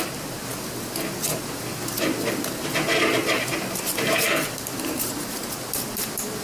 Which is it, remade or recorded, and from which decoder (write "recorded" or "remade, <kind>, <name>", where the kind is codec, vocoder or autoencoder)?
recorded